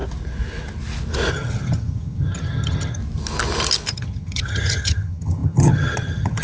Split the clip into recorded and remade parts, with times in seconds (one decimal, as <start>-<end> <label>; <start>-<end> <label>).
0.0-1.3 recorded; 1.3-3.0 remade; 3.0-3.9 recorded; 3.9-6.4 remade